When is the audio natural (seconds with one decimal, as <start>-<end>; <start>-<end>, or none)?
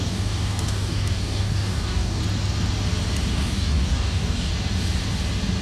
2.2-3.3; 4.5-5.6